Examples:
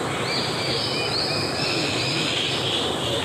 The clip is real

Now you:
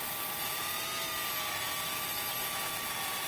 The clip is real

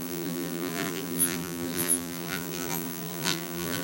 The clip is fake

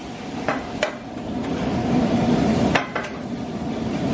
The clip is fake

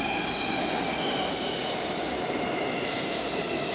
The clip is real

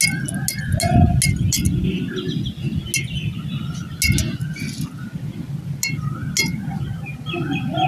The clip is real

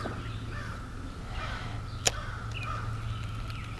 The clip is real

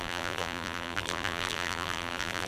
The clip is fake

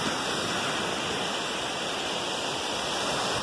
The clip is real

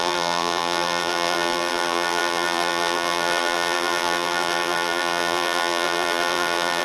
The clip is fake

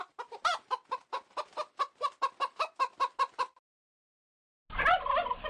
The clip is real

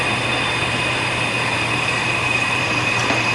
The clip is fake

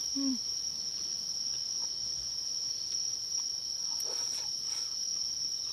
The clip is real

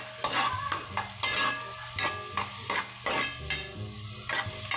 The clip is real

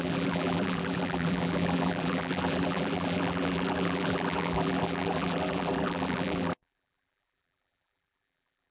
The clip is fake